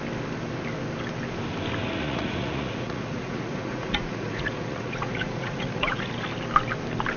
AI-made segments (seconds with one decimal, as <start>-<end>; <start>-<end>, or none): 1.8-6.1

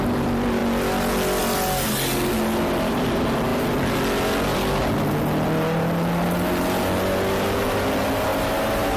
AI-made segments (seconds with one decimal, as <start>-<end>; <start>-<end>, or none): none

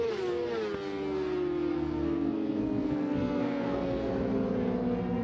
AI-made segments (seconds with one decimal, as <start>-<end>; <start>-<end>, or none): 1.7-4.1

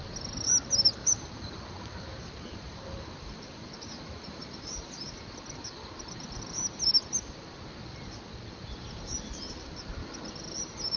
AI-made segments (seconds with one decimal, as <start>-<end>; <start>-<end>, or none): 1.0-5.1

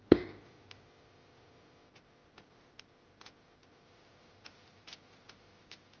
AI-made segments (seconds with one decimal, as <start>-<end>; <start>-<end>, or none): none

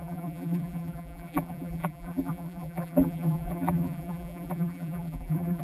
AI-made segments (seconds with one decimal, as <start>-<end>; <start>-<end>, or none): 0.0-5.6

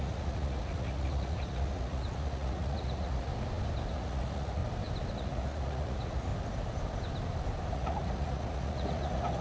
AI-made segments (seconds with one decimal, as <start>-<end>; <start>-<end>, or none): 0.0-3.3; 3.9-4.6; 5.1-6.3; 7.7-9.4

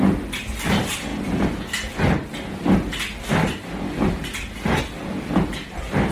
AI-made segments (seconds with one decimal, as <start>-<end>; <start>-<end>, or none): none